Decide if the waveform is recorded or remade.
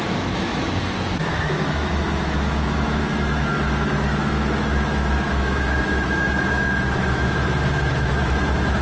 remade